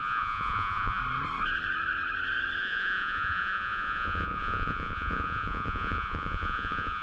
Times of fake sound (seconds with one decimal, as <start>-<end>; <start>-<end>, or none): 0.0-1.0; 2.6-7.0